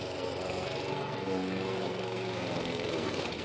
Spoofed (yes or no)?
yes